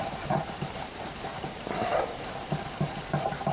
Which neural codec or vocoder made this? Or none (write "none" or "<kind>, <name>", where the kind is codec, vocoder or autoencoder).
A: vocoder, BigVGAN v2